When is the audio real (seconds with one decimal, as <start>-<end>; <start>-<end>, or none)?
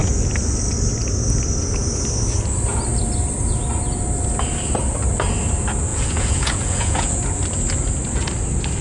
0.0-5.9; 7.2-8.8